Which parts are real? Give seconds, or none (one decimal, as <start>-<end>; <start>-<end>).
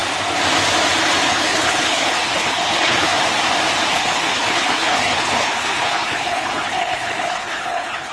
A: 0.0-1.3; 3.1-3.9